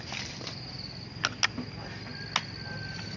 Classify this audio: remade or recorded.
recorded